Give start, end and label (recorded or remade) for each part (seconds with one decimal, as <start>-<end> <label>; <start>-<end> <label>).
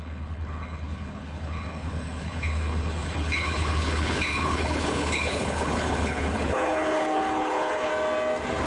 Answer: 0.0-7.9 remade; 7.9-8.7 recorded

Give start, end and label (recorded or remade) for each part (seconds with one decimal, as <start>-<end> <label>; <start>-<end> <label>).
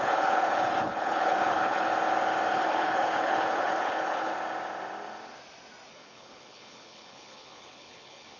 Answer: 0.0-1.9 remade; 1.9-2.5 recorded; 2.5-4.3 remade; 4.3-5.9 recorded; 5.9-8.4 remade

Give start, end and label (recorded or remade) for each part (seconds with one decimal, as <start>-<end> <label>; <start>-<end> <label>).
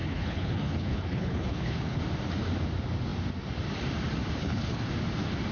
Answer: 0.0-2.0 remade; 2.0-4.4 recorded; 4.4-4.9 remade; 4.9-5.5 recorded